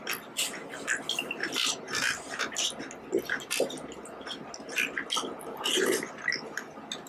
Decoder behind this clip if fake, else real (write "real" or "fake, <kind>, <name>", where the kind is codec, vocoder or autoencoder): real